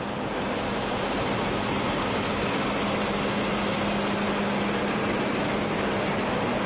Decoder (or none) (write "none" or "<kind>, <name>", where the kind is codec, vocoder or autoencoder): none